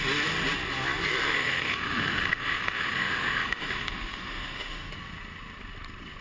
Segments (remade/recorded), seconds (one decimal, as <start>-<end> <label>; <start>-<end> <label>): 0.0-1.3 recorded; 1.3-4.9 remade; 4.9-6.2 recorded